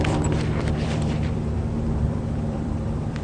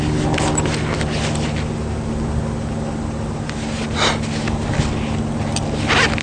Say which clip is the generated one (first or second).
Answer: first